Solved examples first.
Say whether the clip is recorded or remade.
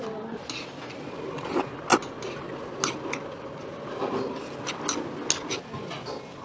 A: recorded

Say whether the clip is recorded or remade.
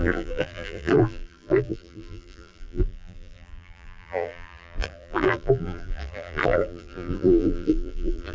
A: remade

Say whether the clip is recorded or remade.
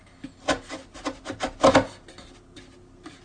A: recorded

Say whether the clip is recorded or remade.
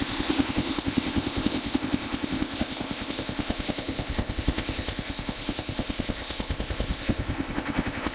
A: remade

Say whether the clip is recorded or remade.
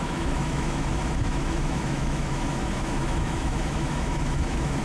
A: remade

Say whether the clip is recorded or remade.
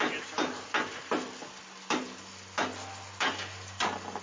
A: recorded